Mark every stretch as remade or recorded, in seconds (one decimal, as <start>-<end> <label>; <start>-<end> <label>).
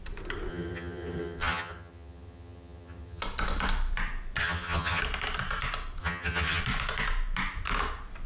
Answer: 0.0-0.5 recorded; 0.5-3.2 remade; 3.2-4.4 recorded; 4.4-5.0 remade; 5.0-6.0 recorded; 6.0-6.6 remade; 6.6-8.3 recorded